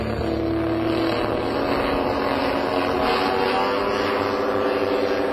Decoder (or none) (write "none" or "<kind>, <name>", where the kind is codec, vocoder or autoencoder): none